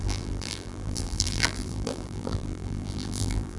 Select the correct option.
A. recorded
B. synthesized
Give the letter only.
B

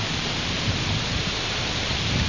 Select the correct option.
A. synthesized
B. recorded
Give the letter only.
A